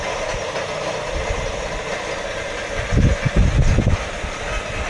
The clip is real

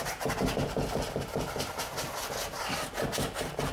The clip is real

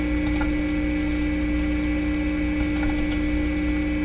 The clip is real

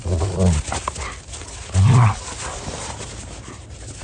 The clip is real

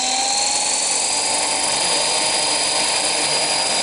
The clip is real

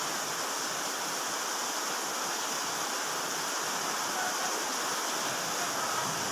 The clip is real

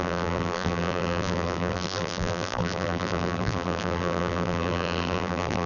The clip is fake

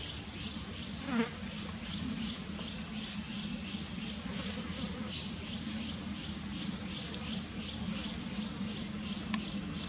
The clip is real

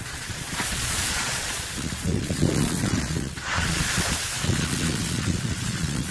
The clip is fake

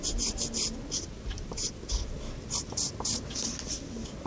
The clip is real